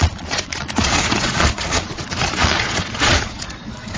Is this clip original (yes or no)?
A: no